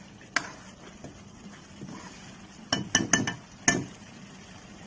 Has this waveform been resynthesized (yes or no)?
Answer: no